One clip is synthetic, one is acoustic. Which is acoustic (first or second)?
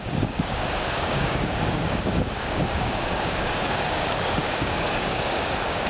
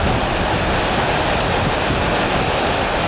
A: second